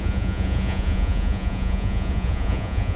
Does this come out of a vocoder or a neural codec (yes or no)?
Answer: yes